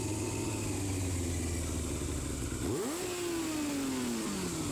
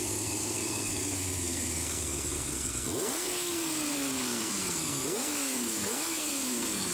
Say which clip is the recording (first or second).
first